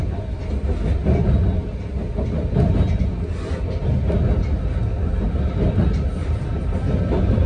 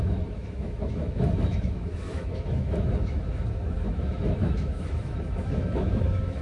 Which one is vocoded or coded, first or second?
second